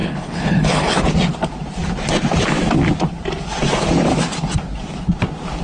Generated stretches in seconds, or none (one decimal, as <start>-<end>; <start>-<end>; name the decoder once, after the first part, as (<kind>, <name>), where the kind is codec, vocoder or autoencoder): 0.0-1.0 (codec, HILCodec)